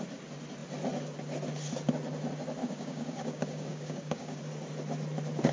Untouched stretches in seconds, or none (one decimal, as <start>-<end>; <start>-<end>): 0.0-2.6; 4.4-5.5